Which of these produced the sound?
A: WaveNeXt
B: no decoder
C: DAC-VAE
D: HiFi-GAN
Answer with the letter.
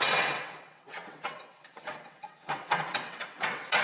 A